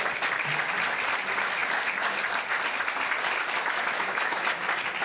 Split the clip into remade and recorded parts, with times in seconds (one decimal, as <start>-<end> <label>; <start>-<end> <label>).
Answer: 0.0-3.4 recorded; 3.4-4.4 remade; 4.4-5.0 recorded